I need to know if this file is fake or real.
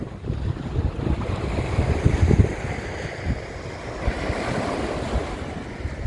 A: real